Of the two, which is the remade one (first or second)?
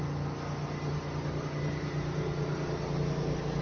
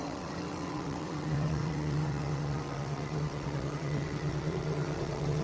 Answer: second